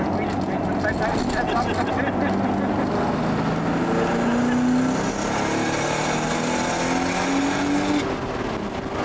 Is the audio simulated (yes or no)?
no